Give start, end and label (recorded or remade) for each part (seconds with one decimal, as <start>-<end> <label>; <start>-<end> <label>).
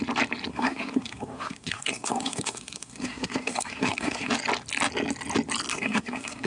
0.0-0.5 recorded; 0.5-4.3 remade; 4.3-5.7 recorded; 5.7-6.5 remade